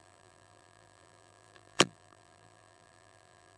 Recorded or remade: remade